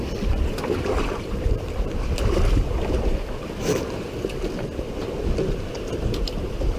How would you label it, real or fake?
fake